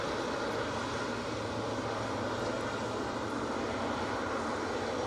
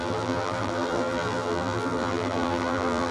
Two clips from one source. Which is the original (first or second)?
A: first